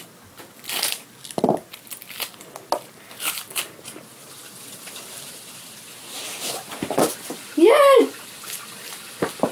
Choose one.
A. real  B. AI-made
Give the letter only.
A